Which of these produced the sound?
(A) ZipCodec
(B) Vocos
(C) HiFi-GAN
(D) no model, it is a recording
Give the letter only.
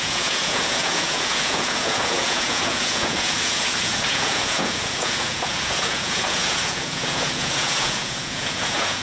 B